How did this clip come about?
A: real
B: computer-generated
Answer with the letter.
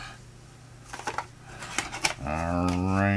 A